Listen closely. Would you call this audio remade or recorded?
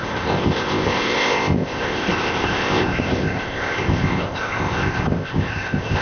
remade